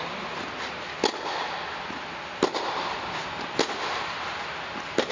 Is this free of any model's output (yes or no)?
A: yes